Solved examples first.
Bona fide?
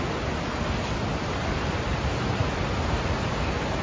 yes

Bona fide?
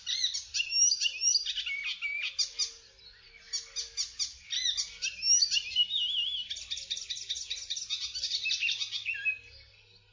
yes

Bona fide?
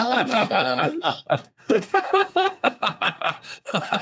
no